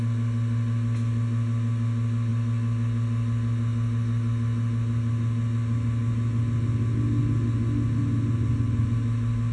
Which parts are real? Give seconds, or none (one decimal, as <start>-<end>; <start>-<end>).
0.0-9.5